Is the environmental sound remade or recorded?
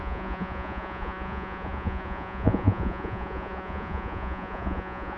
remade